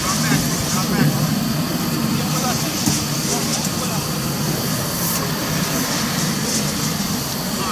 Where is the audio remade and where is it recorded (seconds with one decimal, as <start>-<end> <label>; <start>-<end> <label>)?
0.0-3.5 recorded; 3.5-7.3 remade; 7.3-7.7 recorded